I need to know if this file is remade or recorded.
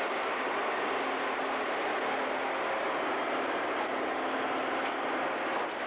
recorded